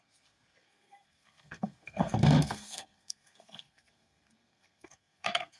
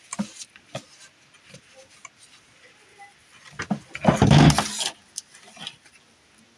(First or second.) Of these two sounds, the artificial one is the first